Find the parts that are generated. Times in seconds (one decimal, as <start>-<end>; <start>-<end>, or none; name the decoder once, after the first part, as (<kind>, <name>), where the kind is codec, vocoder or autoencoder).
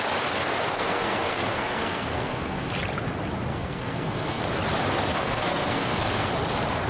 0.4-2.7 (codec, SNAC); 3.5-4.4; 5.1-6.3